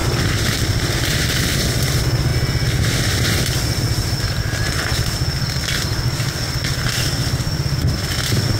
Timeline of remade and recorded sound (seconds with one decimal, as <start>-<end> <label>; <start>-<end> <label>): 0.0-8.6 recorded